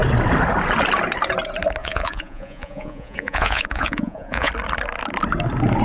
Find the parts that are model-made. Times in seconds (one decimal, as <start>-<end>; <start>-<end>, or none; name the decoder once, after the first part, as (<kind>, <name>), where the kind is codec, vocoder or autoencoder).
1.8-4.5 (vocoder, Vocos)